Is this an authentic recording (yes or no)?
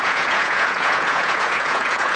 no